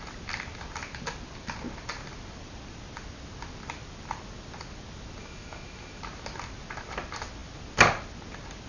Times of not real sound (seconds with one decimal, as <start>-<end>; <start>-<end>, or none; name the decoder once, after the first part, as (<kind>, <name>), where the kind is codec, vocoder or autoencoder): 5.2-6.0 (autoencoder, DAC-VAE)